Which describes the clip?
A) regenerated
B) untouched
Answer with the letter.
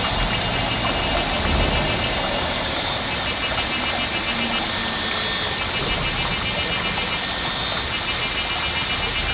B